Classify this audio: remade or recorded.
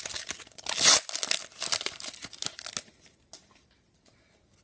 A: recorded